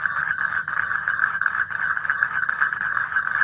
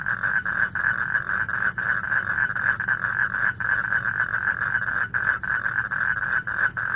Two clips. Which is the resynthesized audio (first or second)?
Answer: first